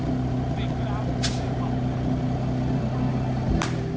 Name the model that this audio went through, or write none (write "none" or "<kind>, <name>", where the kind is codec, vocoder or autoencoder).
none